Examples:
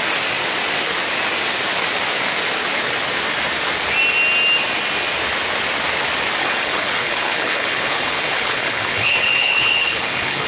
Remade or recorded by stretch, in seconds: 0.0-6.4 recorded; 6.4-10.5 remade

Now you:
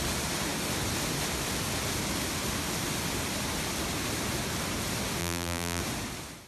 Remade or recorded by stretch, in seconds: 0.0-5.2 recorded; 5.2-5.8 remade; 5.8-6.5 recorded

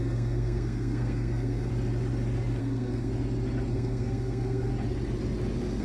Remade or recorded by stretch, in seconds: 0.0-1.7 remade; 1.7-2.6 recorded; 2.6-3.1 remade; 3.1-3.7 recorded; 3.7-4.7 remade; 4.7-5.8 recorded

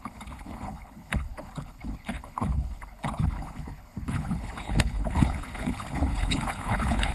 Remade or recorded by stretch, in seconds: 0.0-7.1 remade

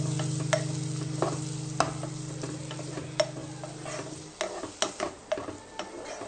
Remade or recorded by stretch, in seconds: 0.0-6.3 recorded

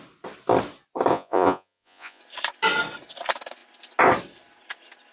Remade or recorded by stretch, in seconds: 0.0-1.1 recorded; 1.1-2.2 remade; 2.2-5.1 recorded

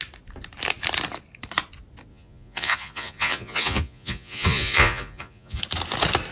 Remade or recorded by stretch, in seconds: 0.0-2.1 recorded; 2.1-5.6 remade; 5.6-6.3 recorded